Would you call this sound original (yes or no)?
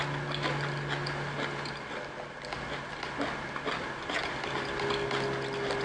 yes